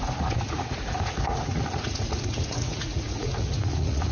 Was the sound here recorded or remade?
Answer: remade